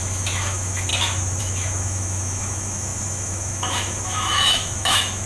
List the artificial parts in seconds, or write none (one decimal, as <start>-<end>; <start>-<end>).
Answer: 0.0-0.9; 1.4-5.3